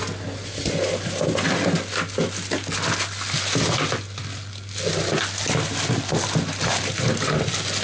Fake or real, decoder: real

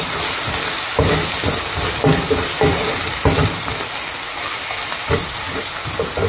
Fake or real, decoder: real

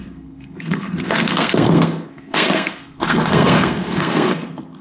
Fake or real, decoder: fake, codec, SNAC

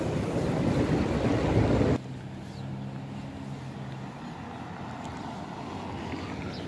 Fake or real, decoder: real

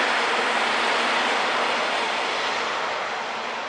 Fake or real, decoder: fake, vocoder, BigVGAN v2